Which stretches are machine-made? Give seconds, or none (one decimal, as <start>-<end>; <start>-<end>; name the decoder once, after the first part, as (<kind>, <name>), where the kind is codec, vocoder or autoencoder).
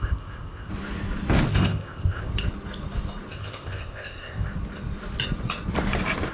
0.0-0.7 (codec, ZipCodec); 1.5-2.3; 3.3-4.5